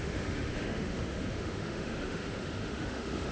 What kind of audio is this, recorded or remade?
remade